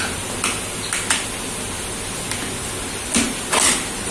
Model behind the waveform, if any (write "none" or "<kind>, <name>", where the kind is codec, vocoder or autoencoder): none